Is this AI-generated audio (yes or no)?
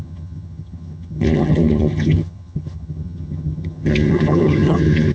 yes